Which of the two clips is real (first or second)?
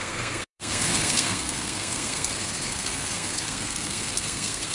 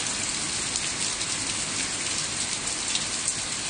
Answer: second